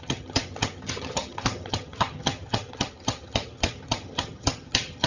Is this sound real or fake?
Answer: fake